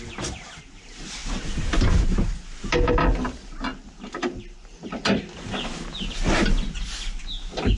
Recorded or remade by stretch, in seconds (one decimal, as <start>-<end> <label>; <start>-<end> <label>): 0.0-7.8 recorded